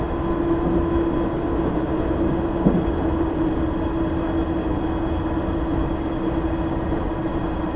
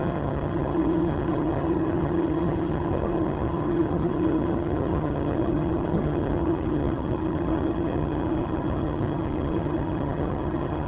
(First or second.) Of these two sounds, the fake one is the second